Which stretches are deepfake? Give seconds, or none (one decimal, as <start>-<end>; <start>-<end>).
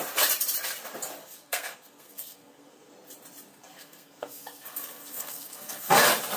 1.2-2.9; 3.5-6.0